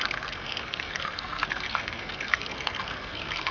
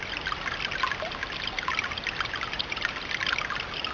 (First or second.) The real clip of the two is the second